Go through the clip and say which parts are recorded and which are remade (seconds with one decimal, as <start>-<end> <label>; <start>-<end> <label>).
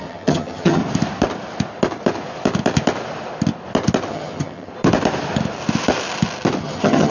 0.0-0.8 remade; 0.8-4.1 recorded; 4.1-4.7 remade; 4.7-6.6 recorded; 6.6-7.1 remade